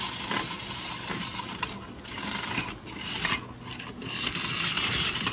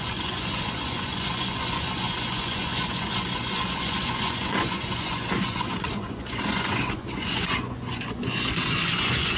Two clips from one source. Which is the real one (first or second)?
first